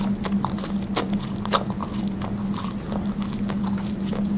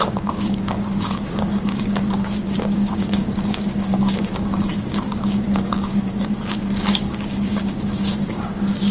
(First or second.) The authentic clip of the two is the first